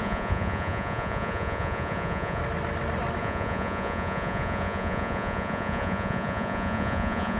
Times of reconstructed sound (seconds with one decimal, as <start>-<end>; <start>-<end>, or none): 0.0-2.4; 3.2-7.4